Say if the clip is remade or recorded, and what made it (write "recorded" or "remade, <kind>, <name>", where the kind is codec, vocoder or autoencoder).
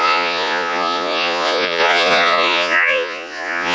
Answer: remade, vocoder, Vocos